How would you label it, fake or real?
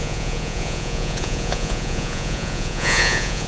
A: fake